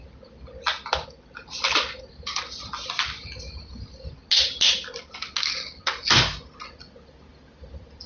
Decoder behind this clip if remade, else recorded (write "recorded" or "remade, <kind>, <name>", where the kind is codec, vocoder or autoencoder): recorded